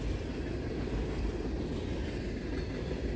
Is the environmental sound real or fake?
real